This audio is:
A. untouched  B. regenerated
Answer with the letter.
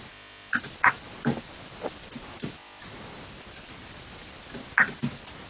A